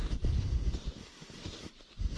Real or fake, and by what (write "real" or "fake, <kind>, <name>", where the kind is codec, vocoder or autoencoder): fake, vocoder, BigVGAN v2